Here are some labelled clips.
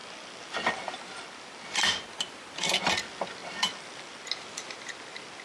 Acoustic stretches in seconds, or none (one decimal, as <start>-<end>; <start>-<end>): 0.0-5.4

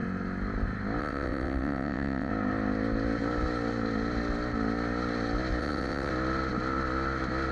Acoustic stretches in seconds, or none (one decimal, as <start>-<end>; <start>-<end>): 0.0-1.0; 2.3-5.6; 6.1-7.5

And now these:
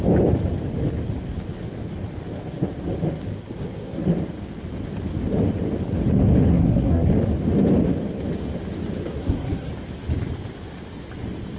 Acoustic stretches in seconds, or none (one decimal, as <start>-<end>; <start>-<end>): 0.0-3.3; 4.0-6.5; 7.1-9.0; 9.7-11.6

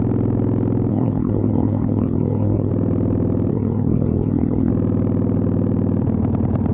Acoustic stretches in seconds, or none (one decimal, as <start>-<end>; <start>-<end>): 0.0-0.9; 2.7-3.5; 4.7-6.7